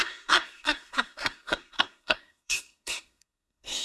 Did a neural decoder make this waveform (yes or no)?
yes